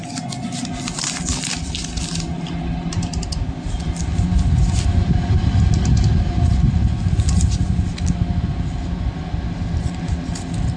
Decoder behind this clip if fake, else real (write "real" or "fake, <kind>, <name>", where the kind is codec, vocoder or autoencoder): real